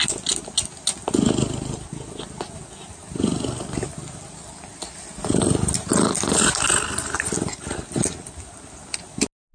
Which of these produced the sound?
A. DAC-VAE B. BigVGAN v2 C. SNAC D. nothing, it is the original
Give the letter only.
D